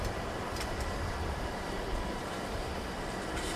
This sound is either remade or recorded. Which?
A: remade